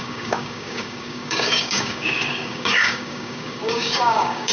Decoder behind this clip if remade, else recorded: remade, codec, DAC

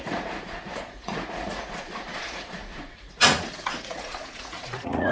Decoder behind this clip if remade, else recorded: remade, vocoder, Vocos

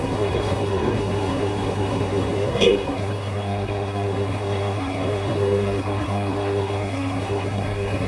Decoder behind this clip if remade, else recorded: remade, codec, SNAC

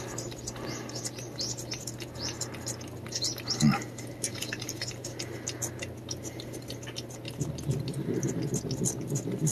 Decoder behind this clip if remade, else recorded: recorded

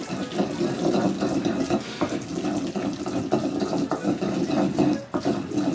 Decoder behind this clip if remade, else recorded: recorded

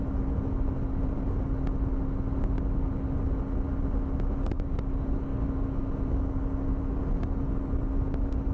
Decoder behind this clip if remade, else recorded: recorded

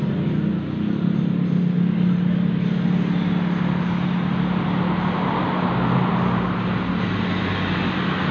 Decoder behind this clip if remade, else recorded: recorded